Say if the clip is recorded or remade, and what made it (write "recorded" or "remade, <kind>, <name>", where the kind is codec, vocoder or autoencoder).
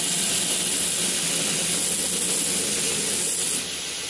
recorded